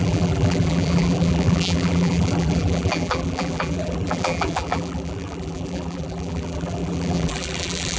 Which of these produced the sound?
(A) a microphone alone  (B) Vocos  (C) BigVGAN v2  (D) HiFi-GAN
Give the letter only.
C